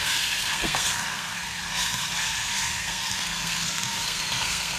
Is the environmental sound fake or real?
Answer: fake